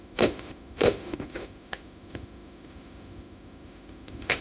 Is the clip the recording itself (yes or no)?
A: no